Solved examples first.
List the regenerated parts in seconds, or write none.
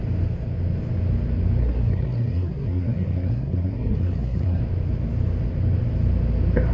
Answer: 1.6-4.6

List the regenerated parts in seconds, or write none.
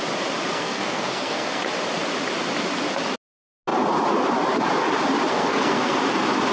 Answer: 0.5-1.6; 5.3-6.0